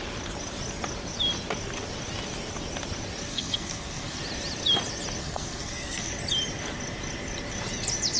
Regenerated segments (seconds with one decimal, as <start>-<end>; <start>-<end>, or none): 3.3-4.2; 5.2-6.1